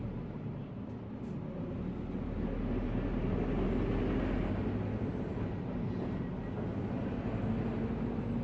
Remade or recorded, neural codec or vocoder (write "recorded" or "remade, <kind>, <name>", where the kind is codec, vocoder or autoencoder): recorded